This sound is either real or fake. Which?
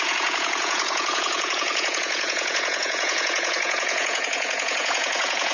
fake